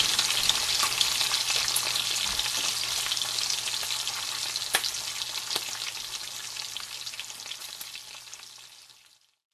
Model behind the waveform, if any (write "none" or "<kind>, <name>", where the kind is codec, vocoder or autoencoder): none